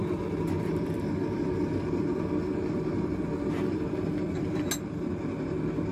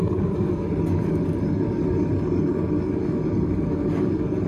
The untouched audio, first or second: first